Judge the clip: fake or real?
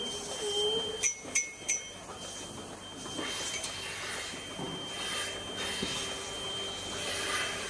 real